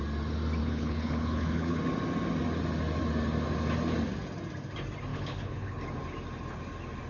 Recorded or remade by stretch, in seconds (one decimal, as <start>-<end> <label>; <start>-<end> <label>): 0.0-0.6 recorded; 0.6-1.8 remade; 1.8-5.1 recorded; 5.1-5.8 remade; 5.8-7.1 recorded